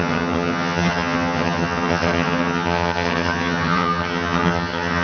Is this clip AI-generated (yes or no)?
yes